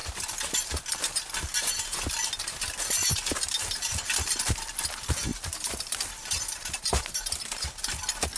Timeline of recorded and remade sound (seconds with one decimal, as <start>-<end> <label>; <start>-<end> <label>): 0.0-3.0 recorded; 3.0-3.6 remade; 3.6-5.3 recorded; 5.3-7.9 remade; 7.9-8.4 recorded